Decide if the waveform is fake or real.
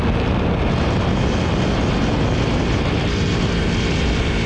real